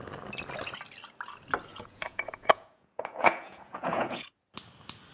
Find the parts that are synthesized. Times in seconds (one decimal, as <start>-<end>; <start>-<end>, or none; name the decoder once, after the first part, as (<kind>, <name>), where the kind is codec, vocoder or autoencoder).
1.7-4.3 (vocoder, Vocos)